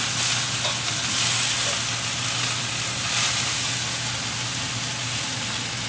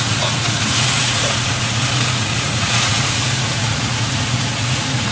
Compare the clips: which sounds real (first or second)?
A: first